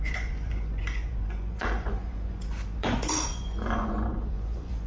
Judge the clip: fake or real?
fake